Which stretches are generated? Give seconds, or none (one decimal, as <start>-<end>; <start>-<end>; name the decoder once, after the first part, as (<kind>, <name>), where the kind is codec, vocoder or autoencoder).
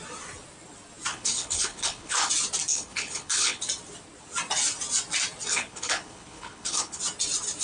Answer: 1.1-2.3 (codec, HILCodec); 2.7-3.6; 5.5-7.0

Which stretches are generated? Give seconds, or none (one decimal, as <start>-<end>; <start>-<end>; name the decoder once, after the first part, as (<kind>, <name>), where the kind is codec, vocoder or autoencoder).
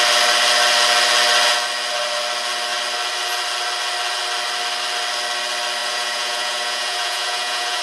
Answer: 5.8-7.8 (vocoder, Vocos)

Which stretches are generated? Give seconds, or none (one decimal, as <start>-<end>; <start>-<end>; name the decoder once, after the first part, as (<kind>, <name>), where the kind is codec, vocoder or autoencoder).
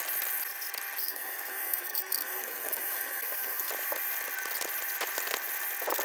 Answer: 1.0-3.7 (codec, SNAC)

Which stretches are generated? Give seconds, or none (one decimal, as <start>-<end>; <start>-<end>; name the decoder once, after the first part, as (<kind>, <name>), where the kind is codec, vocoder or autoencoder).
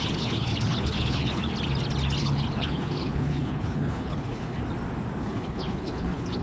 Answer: 0.0-1.5 (codec, HILCodec); 2.2-4.6; 5.2-6.4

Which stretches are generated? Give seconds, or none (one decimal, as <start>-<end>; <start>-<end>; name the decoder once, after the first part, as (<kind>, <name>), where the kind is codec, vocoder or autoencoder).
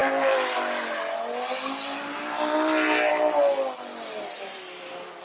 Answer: none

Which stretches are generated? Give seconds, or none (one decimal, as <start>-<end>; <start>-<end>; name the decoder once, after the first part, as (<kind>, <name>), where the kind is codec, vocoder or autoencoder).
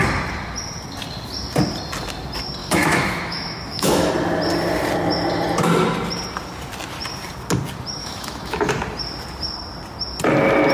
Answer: 2.6-4.1 (autoencoder, DAC-VAE); 8.0-8.7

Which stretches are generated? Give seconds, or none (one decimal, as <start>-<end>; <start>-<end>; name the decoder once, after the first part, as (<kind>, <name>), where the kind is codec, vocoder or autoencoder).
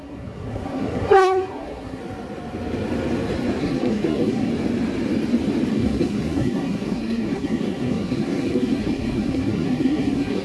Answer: 0.0-2.0 (codec, SNAC); 3.6-4.5; 5.7-10.4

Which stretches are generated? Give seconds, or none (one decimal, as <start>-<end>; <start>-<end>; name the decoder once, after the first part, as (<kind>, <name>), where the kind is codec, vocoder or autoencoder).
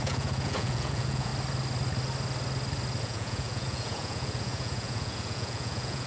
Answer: 0.0-1.3 (vocoder, Vocos); 3.0-6.1